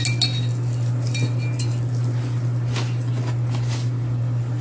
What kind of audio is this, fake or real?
real